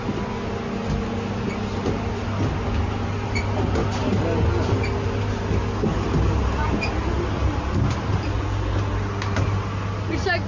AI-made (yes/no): no